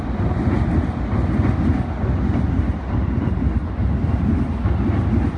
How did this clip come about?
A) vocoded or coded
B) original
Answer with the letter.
B